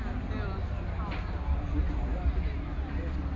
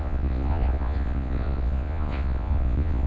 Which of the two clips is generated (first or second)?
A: second